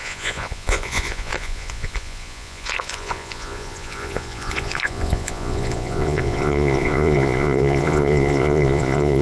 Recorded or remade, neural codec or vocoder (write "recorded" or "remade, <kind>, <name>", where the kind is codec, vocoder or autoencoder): remade, vocoder, Vocos